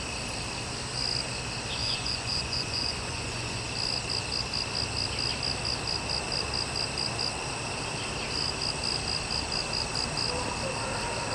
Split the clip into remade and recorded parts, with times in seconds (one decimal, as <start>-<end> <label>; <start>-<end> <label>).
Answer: 0.0-1.8 recorded; 1.8-3.6 remade; 3.6-11.3 recorded